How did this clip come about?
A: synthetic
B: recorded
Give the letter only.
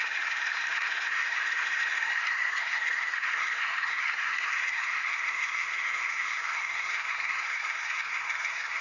A